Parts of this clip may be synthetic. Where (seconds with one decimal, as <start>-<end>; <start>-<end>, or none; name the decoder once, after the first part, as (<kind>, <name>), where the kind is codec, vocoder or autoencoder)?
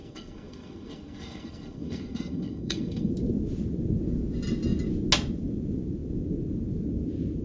0.0-3.1 (codec, SNAC)